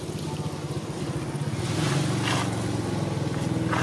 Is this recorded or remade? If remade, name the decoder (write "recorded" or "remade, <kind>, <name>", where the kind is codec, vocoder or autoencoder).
recorded